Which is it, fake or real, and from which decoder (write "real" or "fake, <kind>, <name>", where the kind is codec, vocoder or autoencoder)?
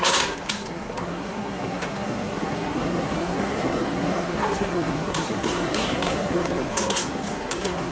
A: fake, codec, SNAC